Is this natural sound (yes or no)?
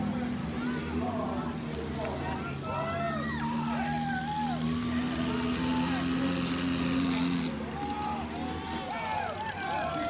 yes